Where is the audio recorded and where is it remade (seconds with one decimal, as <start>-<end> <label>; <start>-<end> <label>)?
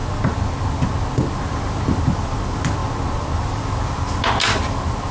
0.0-1.4 recorded; 1.4-2.8 remade; 2.8-3.4 recorded; 3.4-5.1 remade